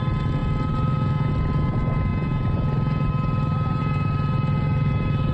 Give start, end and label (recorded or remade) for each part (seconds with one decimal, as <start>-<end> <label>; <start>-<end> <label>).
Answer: 0.0-5.3 recorded